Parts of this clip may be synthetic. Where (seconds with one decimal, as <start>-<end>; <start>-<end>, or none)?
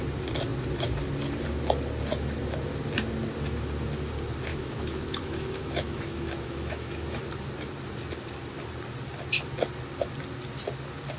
4.5-7.2